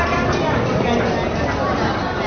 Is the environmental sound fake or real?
real